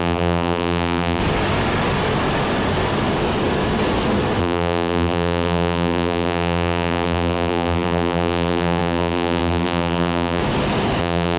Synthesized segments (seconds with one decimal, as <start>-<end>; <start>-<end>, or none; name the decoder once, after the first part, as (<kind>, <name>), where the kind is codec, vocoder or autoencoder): 0.0-1.2 (vocoder, BigVGAN v2); 4.4-10.4; 11.0-11.4